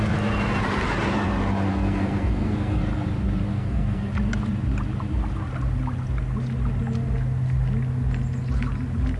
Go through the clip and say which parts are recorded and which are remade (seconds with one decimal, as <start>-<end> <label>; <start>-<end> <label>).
0.0-1.7 recorded; 1.7-2.8 remade; 2.8-3.5 recorded; 3.5-4.1 remade; 4.1-9.2 recorded